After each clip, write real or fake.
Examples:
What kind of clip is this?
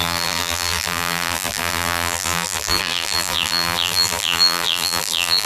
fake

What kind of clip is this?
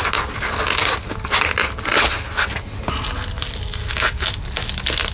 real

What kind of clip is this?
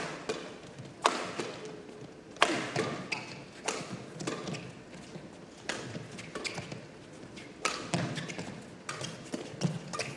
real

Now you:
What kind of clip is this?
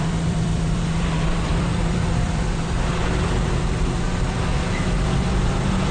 fake